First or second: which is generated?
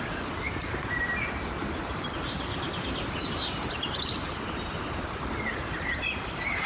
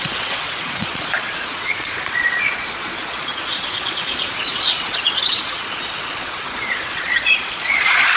second